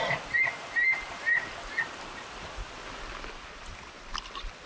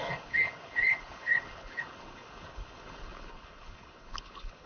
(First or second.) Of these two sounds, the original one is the first